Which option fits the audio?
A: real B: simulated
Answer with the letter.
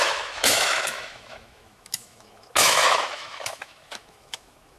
B